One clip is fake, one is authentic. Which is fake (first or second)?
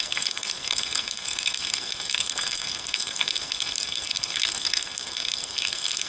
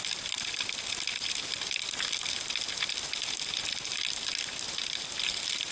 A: first